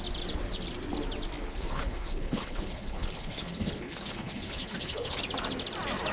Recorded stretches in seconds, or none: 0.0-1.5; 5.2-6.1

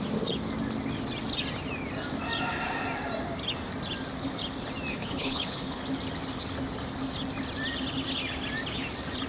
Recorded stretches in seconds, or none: 0.0-4.9; 5.8-9.3